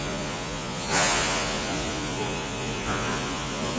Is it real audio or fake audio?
fake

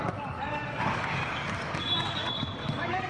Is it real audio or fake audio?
fake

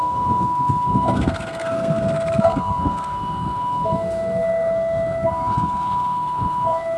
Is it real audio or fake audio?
fake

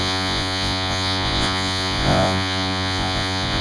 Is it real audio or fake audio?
fake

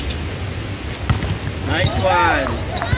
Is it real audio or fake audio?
real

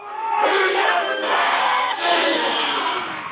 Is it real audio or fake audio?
fake